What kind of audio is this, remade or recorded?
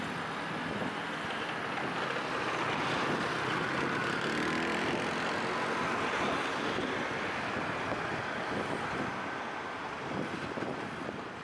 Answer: recorded